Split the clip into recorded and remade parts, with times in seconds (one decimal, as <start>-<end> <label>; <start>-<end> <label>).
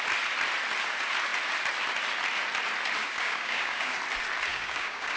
0.0-3.0 recorded; 3.0-4.0 remade; 4.0-4.5 recorded; 4.5-5.2 remade